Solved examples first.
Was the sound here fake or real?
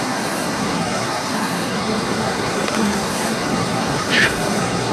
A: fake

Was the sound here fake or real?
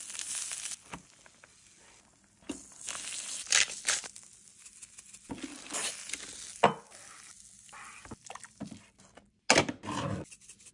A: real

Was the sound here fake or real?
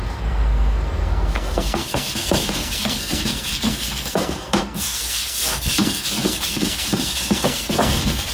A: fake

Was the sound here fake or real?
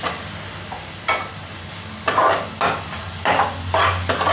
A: real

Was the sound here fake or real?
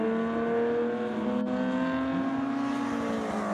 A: real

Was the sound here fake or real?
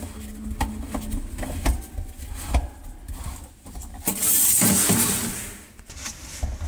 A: real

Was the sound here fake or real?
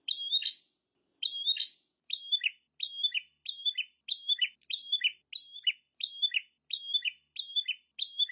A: real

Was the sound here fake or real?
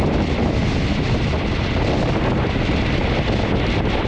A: real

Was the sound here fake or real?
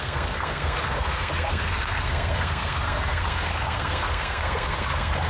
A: fake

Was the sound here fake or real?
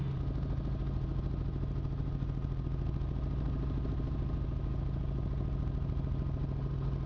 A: real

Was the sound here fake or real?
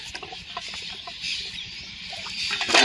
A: real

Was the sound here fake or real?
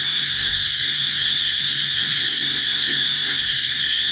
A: fake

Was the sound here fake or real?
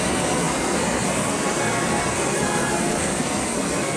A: fake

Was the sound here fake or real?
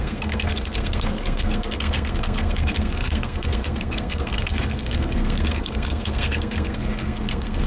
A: fake